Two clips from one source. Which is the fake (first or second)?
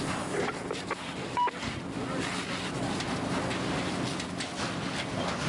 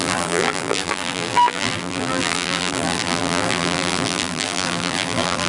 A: second